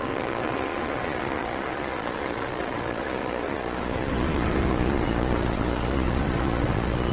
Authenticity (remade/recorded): remade